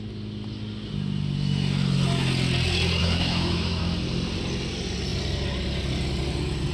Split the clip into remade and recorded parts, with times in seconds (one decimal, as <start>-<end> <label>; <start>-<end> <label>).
0.0-3.0 recorded; 3.0-3.8 remade; 3.8-6.7 recorded